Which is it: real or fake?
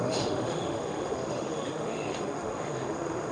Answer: fake